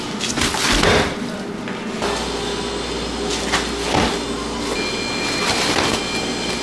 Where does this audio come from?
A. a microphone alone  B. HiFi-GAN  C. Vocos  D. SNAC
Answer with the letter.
A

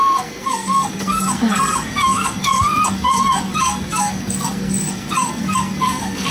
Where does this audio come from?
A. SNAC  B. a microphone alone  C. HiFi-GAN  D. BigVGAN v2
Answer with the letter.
A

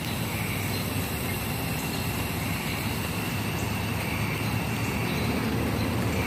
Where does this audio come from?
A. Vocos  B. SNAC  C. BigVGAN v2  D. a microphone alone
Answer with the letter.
D